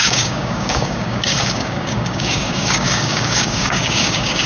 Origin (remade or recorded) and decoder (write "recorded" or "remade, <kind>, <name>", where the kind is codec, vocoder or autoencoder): remade, codec, DAC